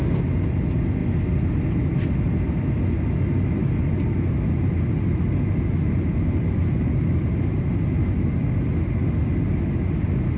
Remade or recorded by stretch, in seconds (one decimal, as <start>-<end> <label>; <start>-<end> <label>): 0.0-10.4 recorded

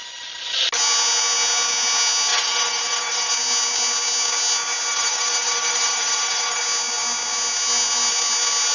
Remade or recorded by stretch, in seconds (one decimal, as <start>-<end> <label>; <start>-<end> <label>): 0.0-2.3 recorded; 2.3-3.3 remade; 3.3-4.9 recorded; 4.9-6.6 remade; 6.6-8.7 recorded